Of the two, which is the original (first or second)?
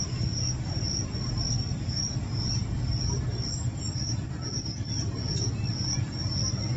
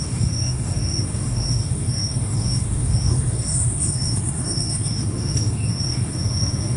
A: first